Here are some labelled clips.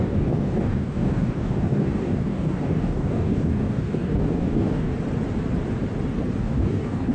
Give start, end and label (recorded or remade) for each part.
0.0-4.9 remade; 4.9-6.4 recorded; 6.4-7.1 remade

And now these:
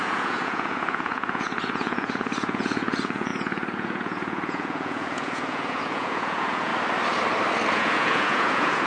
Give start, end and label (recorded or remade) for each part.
0.0-6.7 remade; 6.7-7.7 recorded; 7.7-8.9 remade

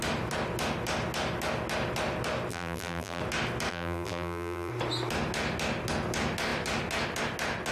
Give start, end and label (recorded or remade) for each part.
0.0-2.5 recorded; 2.5-3.2 remade; 3.2-3.7 recorded; 3.7-4.7 remade; 4.7-7.7 recorded

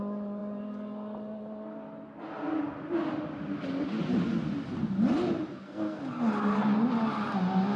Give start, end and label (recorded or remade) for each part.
0.0-5.5 recorded; 5.5-6.0 remade; 6.0-7.8 recorded

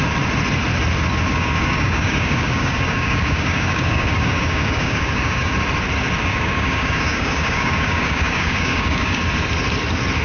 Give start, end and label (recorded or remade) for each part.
0.0-1.3 recorded; 1.3-5.5 remade; 5.5-6.2 recorded; 6.2-9.2 remade; 9.2-10.2 recorded

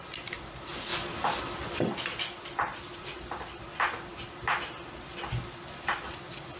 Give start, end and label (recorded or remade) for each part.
0.0-2.7 recorded; 2.7-3.6 remade; 3.6-6.6 recorded

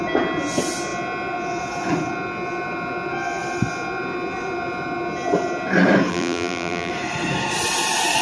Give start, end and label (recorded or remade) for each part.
0.0-6.1 recorded; 6.1-6.9 remade; 6.9-8.2 recorded

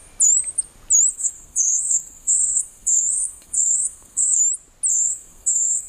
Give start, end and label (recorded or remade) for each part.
0.0-1.1 recorded; 1.1-4.4 remade; 4.4-4.9 recorded; 4.9-5.9 remade